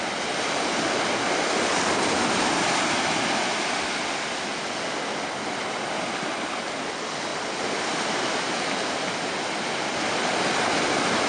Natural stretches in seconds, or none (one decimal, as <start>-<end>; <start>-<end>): 0.0-11.3